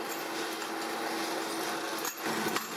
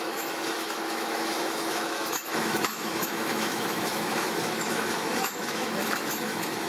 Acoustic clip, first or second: first